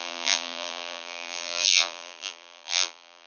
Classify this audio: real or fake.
fake